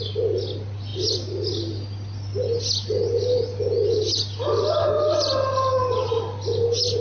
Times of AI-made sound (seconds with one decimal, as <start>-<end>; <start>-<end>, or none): none